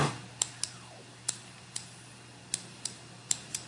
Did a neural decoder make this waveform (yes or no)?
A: no